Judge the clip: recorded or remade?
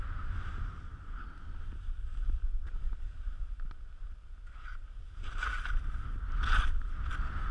recorded